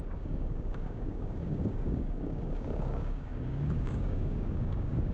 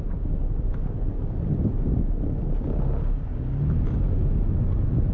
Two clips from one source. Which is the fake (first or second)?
first